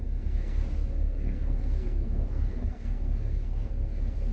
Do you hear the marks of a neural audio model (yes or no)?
yes